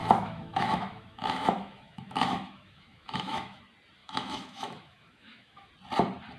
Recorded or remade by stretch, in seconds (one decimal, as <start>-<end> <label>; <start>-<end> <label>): 0.0-3.6 remade; 3.6-4.0 recorded; 4.0-5.7 remade; 5.7-6.4 recorded

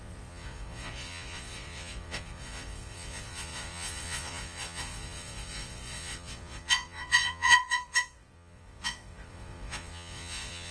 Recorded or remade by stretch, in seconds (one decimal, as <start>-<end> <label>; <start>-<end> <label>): 0.0-10.7 remade

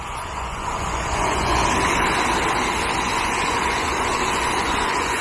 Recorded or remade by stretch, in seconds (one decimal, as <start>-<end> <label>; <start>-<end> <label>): 0.0-1.6 remade; 1.6-3.0 recorded; 3.0-5.2 remade

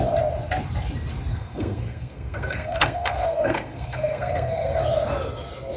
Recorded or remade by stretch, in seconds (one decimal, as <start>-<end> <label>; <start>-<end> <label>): 0.0-1.3 recorded; 1.3-4.8 remade; 4.8-5.8 recorded

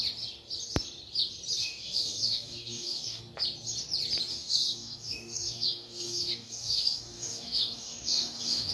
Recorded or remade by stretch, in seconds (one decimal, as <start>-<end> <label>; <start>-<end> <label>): 0.0-1.6 recorded; 1.6-3.2 remade; 3.2-4.3 recorded; 4.3-8.7 remade

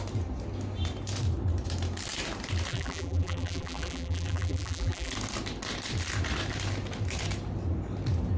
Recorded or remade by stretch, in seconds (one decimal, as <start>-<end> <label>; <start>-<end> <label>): 0.0-2.7 recorded; 2.7-5.1 remade; 5.1-8.4 recorded

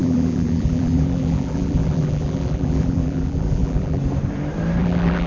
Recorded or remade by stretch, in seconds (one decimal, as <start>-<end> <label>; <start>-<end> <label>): 0.0-4.0 remade; 4.0-4.8 recorded; 4.8-5.3 remade

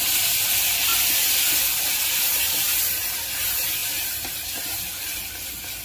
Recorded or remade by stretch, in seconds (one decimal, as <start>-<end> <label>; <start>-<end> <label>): 0.0-5.8 recorded